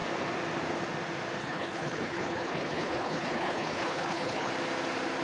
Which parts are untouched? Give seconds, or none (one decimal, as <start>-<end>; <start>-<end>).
0.0-1.4; 4.5-5.2